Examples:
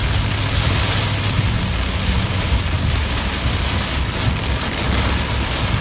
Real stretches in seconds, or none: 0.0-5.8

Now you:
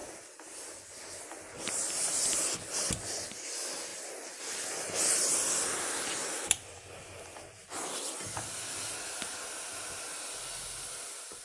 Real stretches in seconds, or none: 0.0-11.4

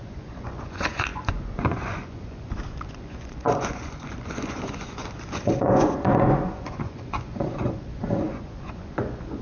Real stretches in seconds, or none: none

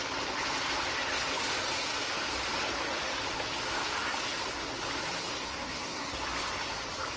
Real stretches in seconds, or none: 0.0-5.3; 6.1-7.2

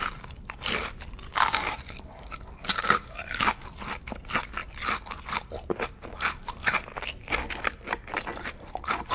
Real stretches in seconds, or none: 0.0-1.3; 3.7-9.1